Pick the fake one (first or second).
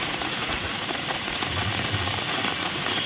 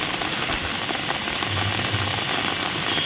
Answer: first